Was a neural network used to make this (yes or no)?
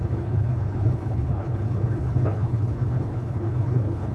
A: yes